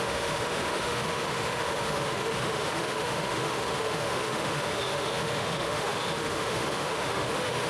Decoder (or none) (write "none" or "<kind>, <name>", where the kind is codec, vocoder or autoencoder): autoencoder, DAC-VAE